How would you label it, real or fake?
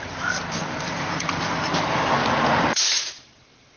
fake